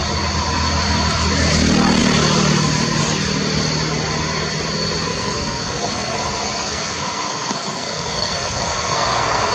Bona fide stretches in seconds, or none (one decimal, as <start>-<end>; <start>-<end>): 0.0-5.1